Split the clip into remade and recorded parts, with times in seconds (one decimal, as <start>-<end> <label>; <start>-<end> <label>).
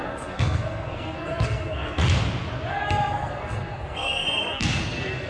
0.0-2.0 remade; 2.0-2.7 recorded; 2.7-5.3 remade